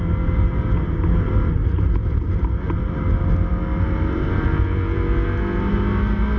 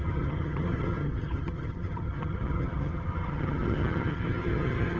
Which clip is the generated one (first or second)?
second